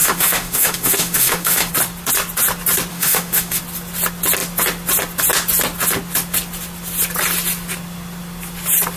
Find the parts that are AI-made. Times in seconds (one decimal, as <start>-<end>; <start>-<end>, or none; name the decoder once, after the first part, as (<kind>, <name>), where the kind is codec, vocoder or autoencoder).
0.0-1.7 (autoencoder, DAC-VAE); 2.9-3.6